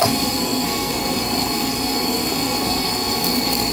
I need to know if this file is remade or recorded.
remade